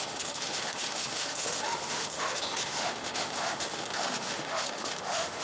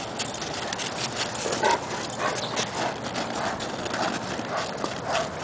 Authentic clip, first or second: second